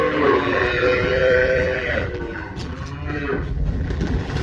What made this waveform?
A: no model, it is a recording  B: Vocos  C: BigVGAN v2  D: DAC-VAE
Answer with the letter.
C